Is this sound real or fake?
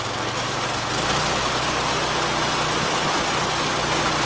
real